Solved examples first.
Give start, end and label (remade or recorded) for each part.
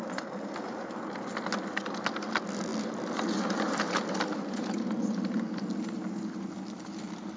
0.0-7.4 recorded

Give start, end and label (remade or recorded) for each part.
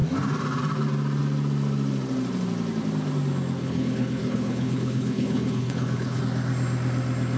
0.0-3.6 recorded; 3.6-6.2 remade; 6.2-7.4 recorded